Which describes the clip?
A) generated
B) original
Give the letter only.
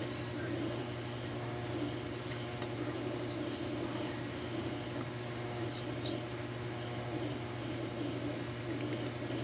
B